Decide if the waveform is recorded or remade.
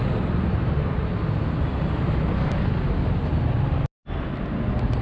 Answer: recorded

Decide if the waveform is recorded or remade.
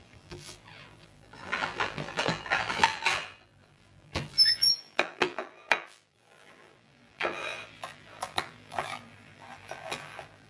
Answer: remade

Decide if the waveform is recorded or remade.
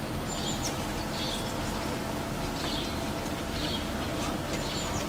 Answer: recorded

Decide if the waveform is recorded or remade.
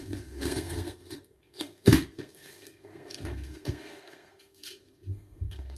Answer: remade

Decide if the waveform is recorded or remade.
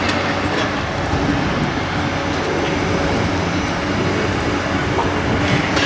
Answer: recorded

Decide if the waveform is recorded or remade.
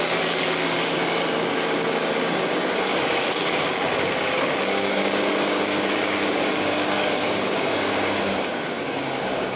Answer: remade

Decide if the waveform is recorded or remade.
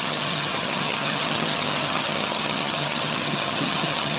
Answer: remade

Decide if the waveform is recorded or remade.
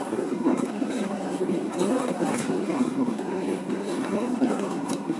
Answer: remade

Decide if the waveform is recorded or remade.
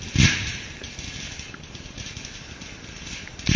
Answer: recorded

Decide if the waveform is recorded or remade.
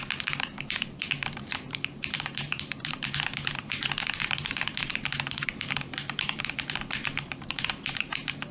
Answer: remade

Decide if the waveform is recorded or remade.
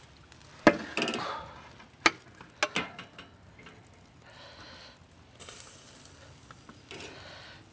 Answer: recorded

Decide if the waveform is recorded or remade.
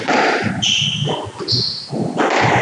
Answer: recorded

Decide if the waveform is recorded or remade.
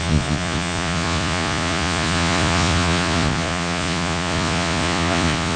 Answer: remade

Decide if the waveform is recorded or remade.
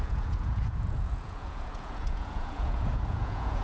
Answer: remade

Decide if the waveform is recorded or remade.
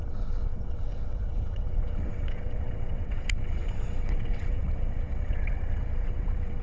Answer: remade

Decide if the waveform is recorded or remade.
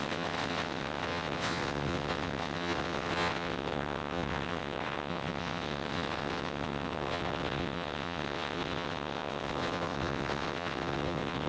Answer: remade